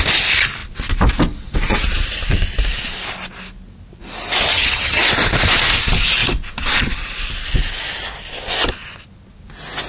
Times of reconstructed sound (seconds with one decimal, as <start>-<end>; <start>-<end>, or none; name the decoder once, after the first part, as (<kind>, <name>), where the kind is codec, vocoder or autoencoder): 4.5-5.0 (vocoder, HiFi-GAN)